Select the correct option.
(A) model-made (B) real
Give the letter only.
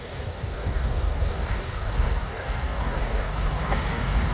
A